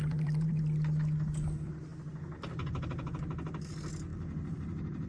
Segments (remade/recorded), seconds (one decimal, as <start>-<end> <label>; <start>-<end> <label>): 0.0-0.6 remade; 0.6-4.1 recorded; 4.1-5.1 remade

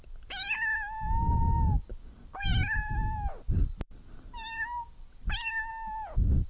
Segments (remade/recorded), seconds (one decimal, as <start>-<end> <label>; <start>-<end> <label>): 0.0-6.5 recorded

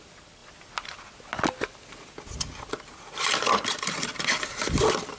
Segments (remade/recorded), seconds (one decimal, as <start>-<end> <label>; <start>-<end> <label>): 0.0-0.4 remade; 0.4-3.5 recorded; 3.5-5.2 remade

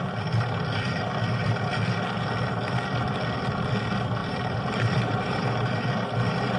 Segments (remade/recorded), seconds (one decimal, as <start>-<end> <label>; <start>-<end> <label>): 0.0-4.2 recorded; 4.2-5.7 remade; 5.7-6.6 recorded

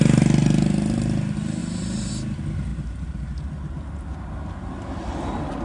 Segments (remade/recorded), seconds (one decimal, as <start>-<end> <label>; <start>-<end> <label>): 0.0-1.6 recorded; 1.6-2.1 remade; 2.1-2.7 recorded; 2.7-3.4 remade; 3.4-5.6 recorded